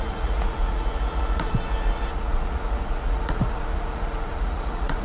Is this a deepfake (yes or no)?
yes